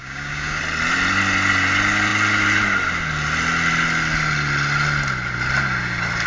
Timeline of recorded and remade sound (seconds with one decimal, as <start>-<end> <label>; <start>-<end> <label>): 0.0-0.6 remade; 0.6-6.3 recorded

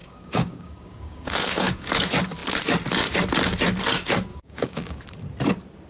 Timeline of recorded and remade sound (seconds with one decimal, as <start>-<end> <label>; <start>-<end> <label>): 0.0-1.9 remade; 1.9-4.3 recorded; 4.3-5.0 remade; 5.0-5.9 recorded

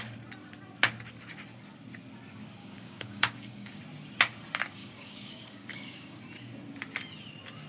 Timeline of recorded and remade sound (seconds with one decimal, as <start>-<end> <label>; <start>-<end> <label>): 0.0-2.6 recorded; 2.6-3.8 remade; 3.8-4.8 recorded; 4.8-6.2 remade; 6.2-7.7 recorded

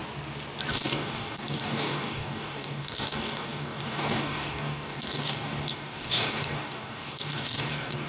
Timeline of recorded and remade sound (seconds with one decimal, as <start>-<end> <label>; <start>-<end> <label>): 0.0-0.7 recorded; 0.7-8.1 remade